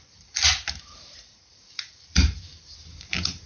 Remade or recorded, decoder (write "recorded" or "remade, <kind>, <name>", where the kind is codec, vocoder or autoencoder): remade, vocoder, BigVGAN v2